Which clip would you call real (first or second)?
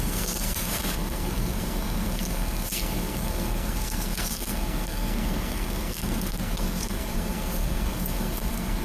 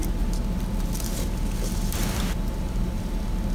second